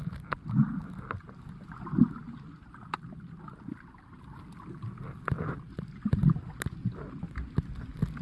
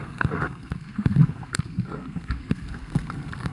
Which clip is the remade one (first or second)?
second